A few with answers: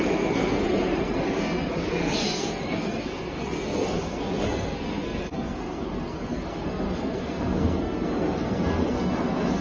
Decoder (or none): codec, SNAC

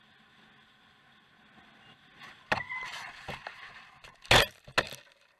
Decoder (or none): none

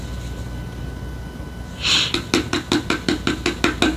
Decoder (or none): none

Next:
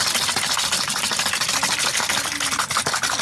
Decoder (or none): none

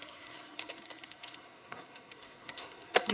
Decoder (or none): codec, SNAC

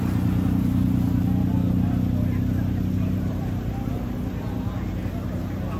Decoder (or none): none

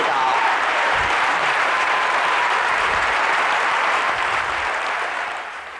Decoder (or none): vocoder, BigVGAN v2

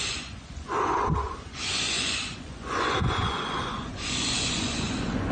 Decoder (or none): vocoder, Vocos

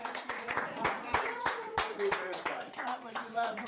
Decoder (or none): vocoder, Vocos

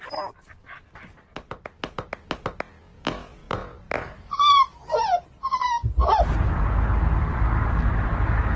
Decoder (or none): none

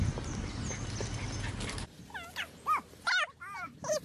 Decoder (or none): none